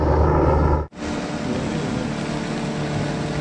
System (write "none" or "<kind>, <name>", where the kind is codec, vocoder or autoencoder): none